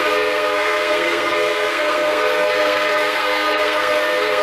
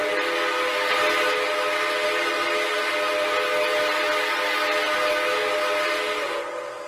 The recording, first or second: second